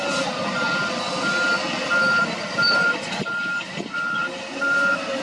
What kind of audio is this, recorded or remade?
remade